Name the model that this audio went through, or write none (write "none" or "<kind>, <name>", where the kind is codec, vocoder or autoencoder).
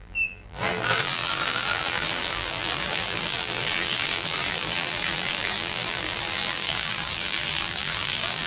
vocoder, BigVGAN v2